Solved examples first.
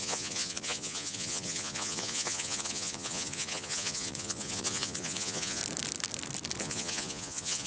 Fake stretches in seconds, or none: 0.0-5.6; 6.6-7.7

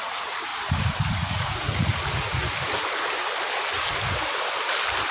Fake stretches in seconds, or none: 0.0-0.5; 1.1-2.4

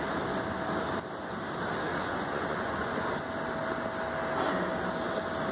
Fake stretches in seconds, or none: 1.9-3.1

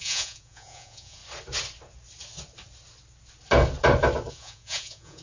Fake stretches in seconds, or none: 0.0-1.2; 4.3-5.2

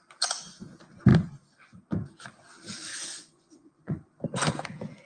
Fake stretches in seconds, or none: 2.9-4.1

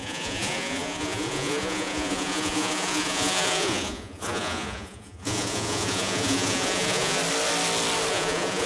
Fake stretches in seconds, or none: 0.0-7.2; 8.1-8.7

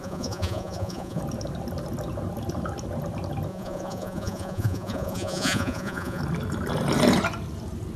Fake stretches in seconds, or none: 0.0-1.2; 3.5-6.2